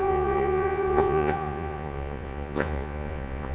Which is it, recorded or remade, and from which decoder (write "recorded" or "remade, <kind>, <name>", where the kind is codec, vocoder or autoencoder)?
remade, vocoder, Vocos